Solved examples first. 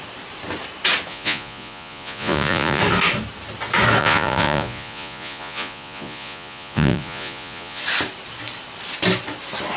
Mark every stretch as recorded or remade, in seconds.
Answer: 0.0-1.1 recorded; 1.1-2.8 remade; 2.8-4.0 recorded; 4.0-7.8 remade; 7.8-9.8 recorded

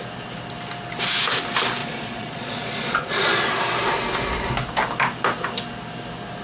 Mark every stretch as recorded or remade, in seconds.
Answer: 0.0-1.8 recorded; 1.8-3.5 remade; 3.5-6.4 recorded

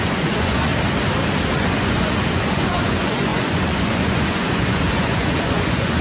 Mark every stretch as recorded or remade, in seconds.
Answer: 0.0-0.7 remade; 0.7-1.5 recorded; 1.5-6.0 remade

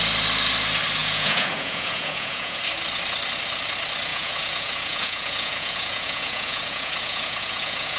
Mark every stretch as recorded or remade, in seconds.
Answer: 0.0-1.0 recorded; 1.0-2.6 remade; 2.6-4.1 recorded; 4.1-8.0 remade

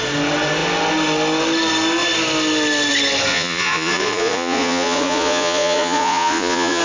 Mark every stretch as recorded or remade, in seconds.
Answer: 0.0-3.3 recorded; 3.3-6.8 remade

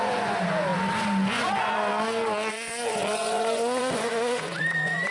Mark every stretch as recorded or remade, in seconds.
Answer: 0.0-0.7 remade; 0.7-1.3 recorded; 1.3-1.9 remade; 1.9-2.5 recorded; 2.5-5.1 remade